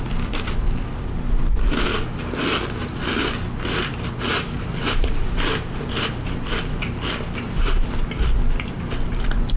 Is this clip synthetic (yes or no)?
no